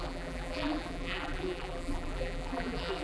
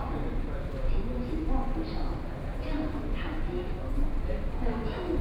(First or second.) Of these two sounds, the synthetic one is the first